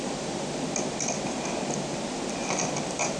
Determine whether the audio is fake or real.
real